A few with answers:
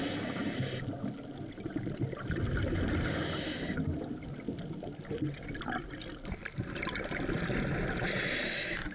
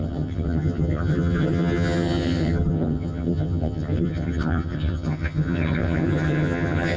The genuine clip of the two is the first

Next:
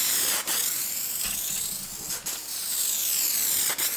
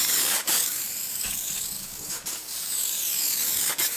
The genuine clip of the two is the first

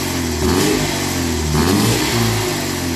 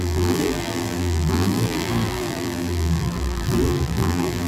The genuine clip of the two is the first